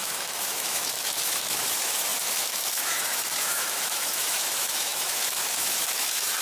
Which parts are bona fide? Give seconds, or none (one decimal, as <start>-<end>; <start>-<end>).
none